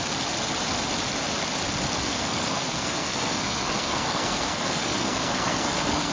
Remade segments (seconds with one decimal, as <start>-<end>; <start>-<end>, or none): 2.1-6.1